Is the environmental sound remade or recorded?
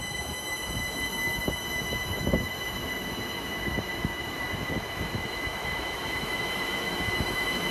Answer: remade